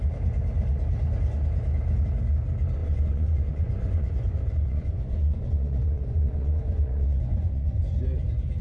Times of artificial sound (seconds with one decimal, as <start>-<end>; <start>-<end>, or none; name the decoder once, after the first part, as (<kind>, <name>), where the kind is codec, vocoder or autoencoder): 2.8-7.8 (vocoder, Vocos)